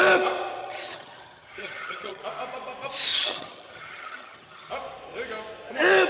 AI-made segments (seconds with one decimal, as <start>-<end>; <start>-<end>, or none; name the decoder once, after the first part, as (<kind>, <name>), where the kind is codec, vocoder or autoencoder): 0.6-2.2 (vocoder, HiFi-GAN); 3.1-4.7